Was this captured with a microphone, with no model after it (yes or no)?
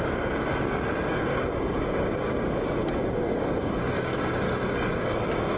no